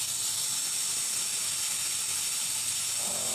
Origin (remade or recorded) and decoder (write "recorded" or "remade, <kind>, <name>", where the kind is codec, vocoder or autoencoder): recorded